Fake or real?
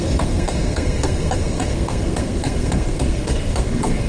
fake